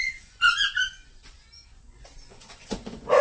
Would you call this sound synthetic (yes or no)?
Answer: yes